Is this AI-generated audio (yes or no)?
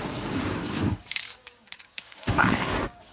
yes